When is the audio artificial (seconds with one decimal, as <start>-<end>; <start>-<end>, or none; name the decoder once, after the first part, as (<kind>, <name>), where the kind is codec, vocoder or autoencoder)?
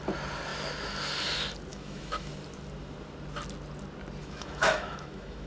1.7-2.3 (autoencoder, DAC-VAE); 4.2-5.5